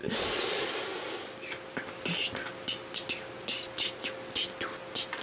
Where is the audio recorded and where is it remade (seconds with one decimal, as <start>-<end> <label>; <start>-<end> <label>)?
0.0-5.2 recorded